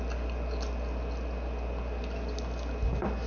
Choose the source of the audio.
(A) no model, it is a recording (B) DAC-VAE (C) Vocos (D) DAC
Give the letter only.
A